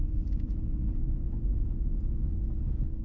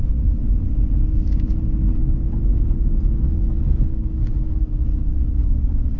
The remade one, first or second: first